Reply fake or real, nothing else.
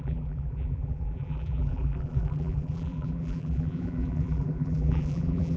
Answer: fake